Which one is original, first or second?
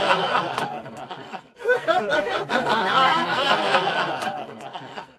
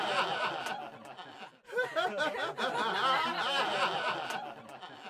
second